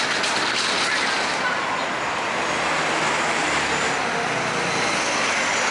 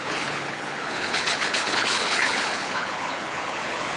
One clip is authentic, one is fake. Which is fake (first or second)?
second